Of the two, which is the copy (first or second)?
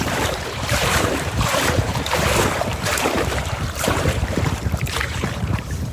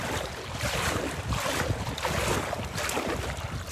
first